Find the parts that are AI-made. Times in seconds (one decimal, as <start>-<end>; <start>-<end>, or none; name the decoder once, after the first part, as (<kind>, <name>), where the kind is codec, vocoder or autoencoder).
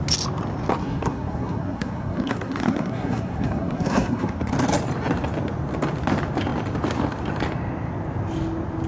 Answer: 0.8-4.5 (codec, SNAC)